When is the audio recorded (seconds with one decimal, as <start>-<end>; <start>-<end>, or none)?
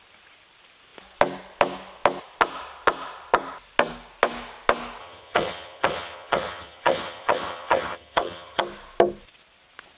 0.0-5.0; 8.6-10.0